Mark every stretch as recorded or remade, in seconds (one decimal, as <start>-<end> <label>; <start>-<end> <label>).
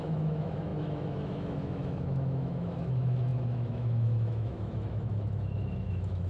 0.0-6.3 remade